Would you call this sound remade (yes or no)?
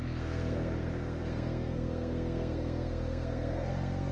yes